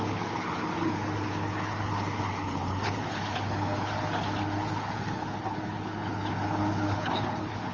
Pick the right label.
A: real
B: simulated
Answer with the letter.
B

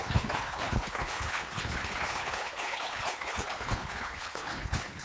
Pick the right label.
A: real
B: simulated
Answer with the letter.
B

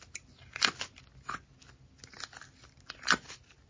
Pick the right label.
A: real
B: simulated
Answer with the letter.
A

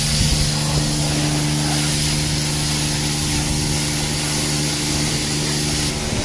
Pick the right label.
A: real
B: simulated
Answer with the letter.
A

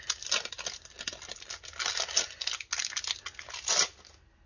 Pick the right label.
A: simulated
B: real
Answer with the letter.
B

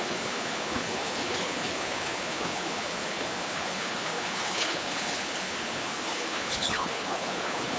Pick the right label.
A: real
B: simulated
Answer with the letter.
B